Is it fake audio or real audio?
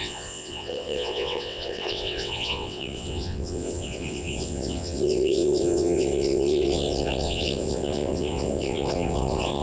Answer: fake